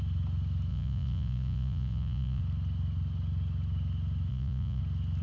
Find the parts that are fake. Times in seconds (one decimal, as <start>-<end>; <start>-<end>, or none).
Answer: 0.7-2.4; 4.3-4.8